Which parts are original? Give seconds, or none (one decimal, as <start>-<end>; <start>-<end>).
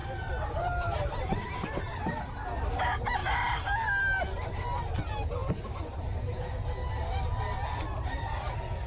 2.0-5.4; 6.4-8.9